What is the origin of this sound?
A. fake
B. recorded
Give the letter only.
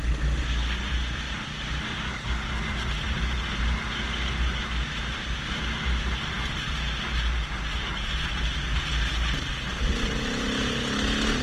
B